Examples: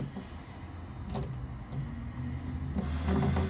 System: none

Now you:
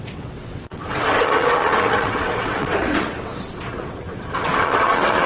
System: vocoder, WaveNeXt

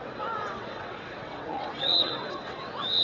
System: vocoder, WaveNeXt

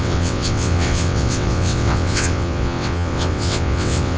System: vocoder, WaveNeXt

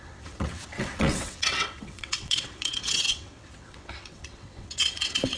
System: vocoder, WaveNeXt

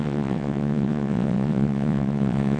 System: vocoder, WaveNeXt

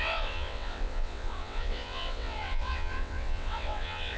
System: vocoder, WaveNeXt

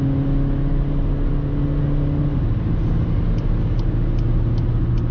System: none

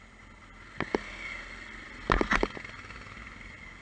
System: none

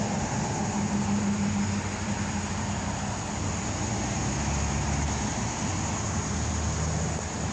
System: none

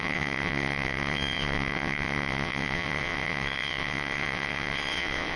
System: vocoder, WaveNeXt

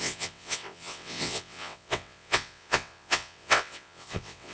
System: vocoder, WaveNeXt